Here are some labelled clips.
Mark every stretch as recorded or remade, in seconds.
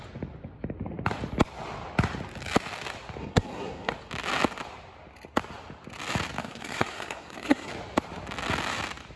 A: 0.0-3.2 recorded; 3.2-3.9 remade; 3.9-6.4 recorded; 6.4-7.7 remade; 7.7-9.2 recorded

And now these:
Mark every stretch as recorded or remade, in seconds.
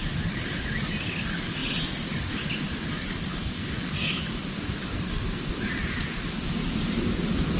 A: 0.0-3.3 recorded; 3.3-4.2 remade; 4.2-4.9 recorded; 4.9-5.5 remade; 5.5-7.6 recorded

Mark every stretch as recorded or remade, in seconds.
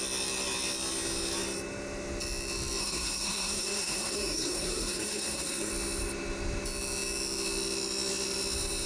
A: 0.0-2.8 recorded; 2.8-5.7 remade; 5.7-8.9 recorded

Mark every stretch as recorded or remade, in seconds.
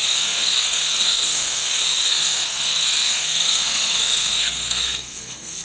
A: 0.0-5.6 remade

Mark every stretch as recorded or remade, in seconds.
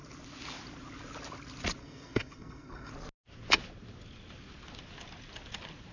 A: 0.0-1.8 recorded; 1.8-2.9 remade; 2.9-5.9 recorded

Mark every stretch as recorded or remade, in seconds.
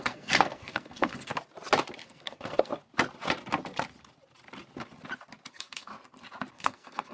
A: 0.0-1.3 remade; 1.3-2.0 recorded; 2.0-2.7 remade; 2.7-5.5 recorded; 5.5-5.9 remade; 5.9-6.5 recorded; 6.5-7.1 remade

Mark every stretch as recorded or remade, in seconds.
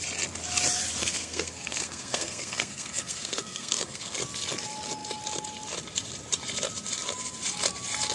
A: 0.0-1.0 recorded; 1.0-4.2 remade; 4.2-8.1 recorded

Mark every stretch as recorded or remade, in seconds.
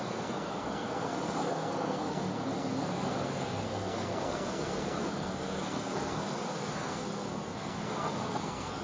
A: 0.0-8.8 remade